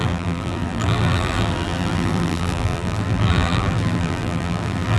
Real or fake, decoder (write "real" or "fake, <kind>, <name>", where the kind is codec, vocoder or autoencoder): fake, vocoder, BigVGAN v2